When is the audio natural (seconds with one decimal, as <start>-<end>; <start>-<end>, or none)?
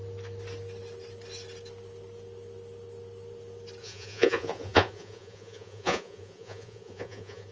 0.0-3.8